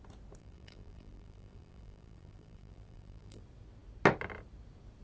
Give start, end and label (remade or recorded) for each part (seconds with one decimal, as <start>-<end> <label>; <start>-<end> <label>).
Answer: 0.0-0.4 recorded; 0.4-3.4 remade; 3.4-5.0 recorded